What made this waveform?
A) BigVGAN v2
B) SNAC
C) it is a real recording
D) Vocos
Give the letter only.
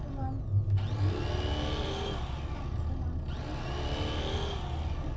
C